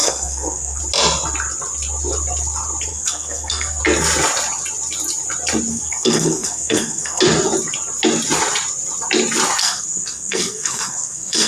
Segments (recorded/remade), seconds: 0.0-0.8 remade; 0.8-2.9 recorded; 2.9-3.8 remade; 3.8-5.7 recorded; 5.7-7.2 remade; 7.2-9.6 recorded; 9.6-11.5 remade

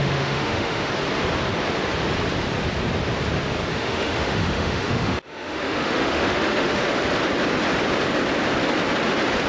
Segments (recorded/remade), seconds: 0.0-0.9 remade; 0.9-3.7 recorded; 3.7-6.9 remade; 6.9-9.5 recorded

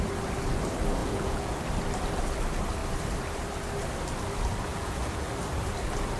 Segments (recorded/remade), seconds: 0.0-1.0 recorded; 1.0-1.6 remade; 1.6-4.7 recorded; 4.7-5.3 remade; 5.3-6.2 recorded

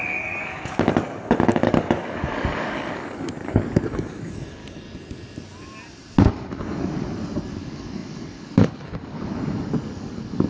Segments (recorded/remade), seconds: 0.0-4.6 remade; 4.6-6.3 recorded; 6.3-10.5 remade

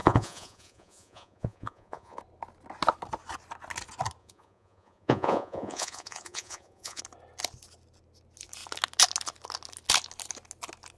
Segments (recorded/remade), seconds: 0.0-2.2 remade; 2.2-4.2 recorded; 4.2-7.0 remade; 7.0-11.0 recorded